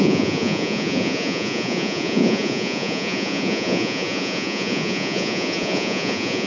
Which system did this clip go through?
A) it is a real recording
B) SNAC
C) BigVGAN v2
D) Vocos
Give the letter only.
D